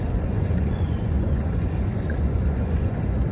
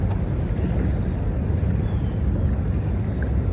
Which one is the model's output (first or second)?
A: first